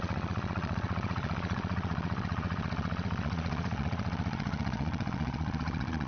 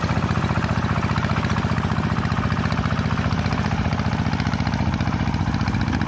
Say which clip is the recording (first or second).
second